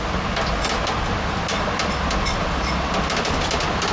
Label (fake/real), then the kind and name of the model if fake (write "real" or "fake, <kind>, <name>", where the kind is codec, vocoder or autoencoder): real